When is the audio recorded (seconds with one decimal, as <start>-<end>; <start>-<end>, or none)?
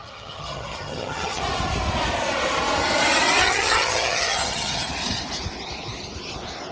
1.4-3.4; 4.9-6.7